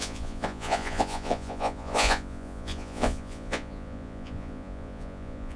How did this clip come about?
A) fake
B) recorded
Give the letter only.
A